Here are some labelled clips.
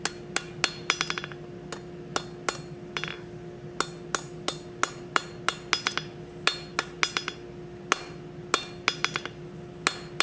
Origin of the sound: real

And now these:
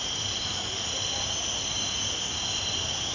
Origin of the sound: real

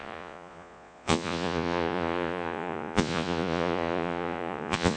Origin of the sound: fake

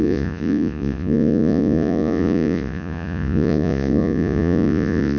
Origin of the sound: fake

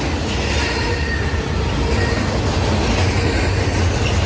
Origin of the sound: real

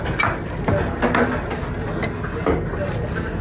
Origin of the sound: real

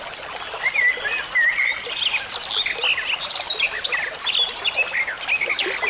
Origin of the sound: real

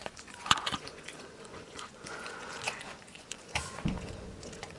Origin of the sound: fake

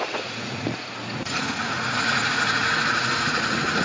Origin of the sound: fake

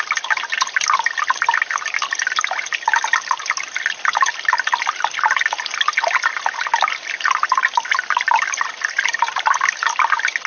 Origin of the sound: real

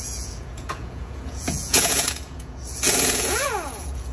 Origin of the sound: fake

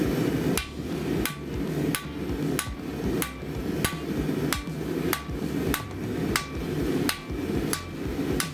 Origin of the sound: real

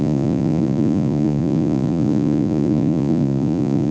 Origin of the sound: fake